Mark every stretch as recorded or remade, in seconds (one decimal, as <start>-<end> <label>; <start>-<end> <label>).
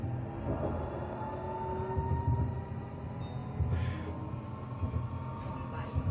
0.0-6.1 recorded